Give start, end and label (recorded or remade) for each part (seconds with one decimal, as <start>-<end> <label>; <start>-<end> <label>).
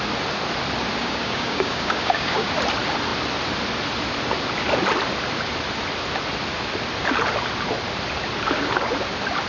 0.0-1.0 recorded; 1.0-2.5 remade; 2.5-9.5 recorded